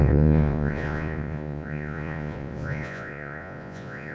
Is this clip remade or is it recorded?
remade